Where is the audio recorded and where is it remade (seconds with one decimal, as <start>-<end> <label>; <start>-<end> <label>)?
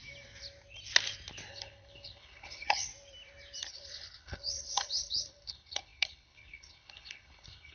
0.0-1.5 recorded; 1.5-2.9 remade; 2.9-3.7 recorded; 3.7-7.7 remade